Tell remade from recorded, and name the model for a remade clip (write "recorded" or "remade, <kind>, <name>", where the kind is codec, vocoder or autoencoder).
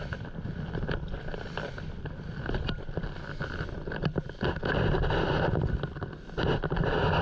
recorded